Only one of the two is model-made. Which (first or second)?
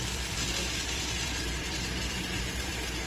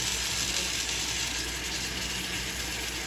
first